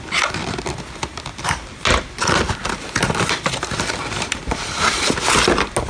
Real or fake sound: real